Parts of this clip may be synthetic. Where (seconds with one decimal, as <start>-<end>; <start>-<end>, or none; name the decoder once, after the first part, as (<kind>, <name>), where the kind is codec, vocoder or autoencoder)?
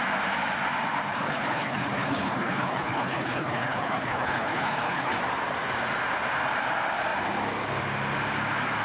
1.1-5.2 (codec, HILCodec)